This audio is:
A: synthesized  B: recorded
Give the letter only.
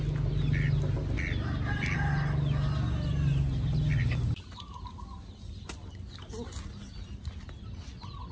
B